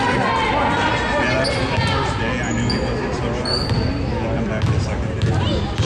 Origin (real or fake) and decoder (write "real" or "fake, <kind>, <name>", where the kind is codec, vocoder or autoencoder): real